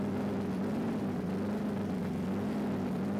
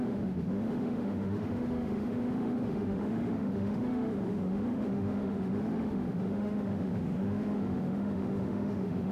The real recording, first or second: first